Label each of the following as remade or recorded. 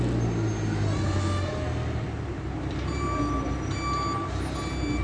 recorded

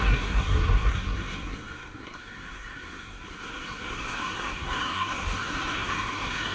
remade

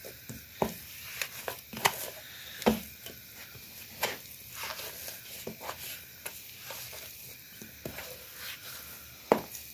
recorded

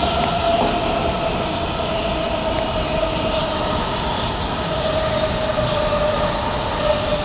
recorded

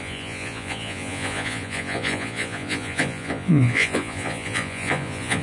remade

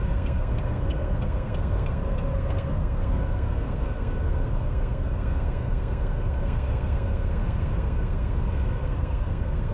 remade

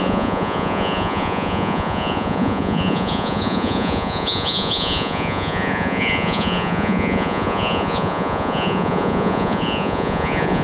remade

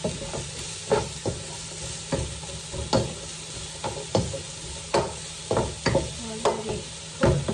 recorded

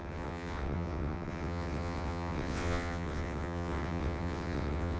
remade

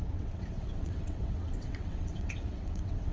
remade